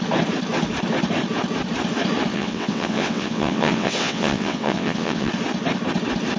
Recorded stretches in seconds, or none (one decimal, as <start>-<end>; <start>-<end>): 0.0-2.3; 5.3-6.4